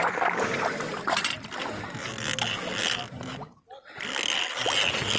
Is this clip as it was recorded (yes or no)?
yes